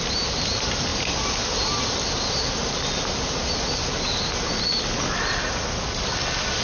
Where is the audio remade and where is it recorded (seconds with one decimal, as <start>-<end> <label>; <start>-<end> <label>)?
0.0-6.6 recorded